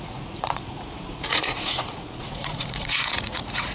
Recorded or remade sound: remade